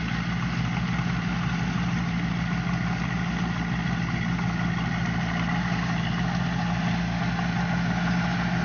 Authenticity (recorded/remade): recorded